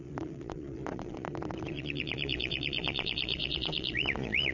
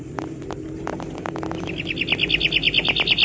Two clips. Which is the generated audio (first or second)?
first